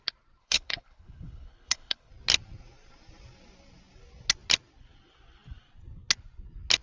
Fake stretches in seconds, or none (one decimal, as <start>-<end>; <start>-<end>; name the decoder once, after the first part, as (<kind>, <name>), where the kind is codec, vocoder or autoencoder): 0.4-2.1 (codec, HILCodec)